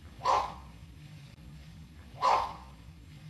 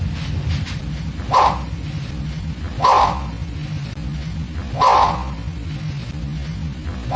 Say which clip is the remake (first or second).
first